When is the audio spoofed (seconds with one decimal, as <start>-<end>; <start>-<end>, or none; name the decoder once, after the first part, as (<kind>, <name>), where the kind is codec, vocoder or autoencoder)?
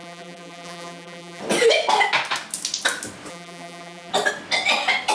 0.0-1.4 (vocoder, BigVGAN v2); 3.3-4.1